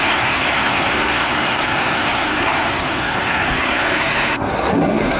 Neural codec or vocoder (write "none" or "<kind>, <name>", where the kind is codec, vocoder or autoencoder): codec, SNAC